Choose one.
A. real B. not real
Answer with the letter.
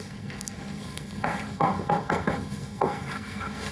B